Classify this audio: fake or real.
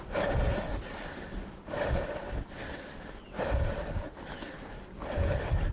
real